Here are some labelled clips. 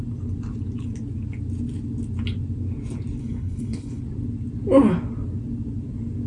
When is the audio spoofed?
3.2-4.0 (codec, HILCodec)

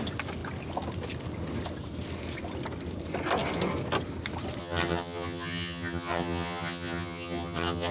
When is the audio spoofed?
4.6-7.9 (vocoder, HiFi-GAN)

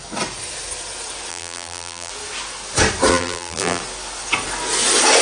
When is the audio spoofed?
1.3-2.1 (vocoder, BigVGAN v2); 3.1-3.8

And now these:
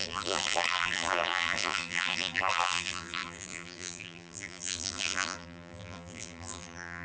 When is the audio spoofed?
0.0-7.0 (vocoder, BigVGAN v2)

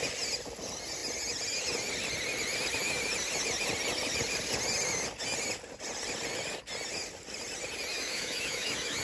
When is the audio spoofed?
7.9-9.0 (autoencoder, DAC-VAE)

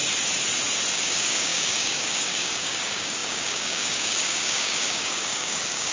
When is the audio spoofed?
0.9-5.9 (codec, DAC)